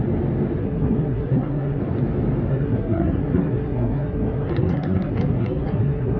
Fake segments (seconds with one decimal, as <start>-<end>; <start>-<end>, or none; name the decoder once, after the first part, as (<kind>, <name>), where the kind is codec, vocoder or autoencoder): 0.6-1.8 (codec, SNAC); 2.5-6.2